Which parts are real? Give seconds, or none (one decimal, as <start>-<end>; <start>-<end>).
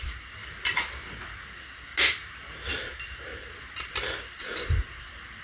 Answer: 0.4-1.5; 1.9-2.7